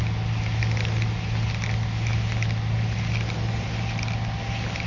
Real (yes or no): yes